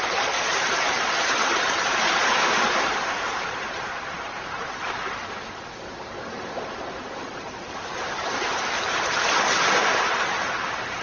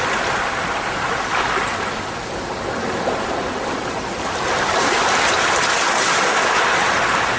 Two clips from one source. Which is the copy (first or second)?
first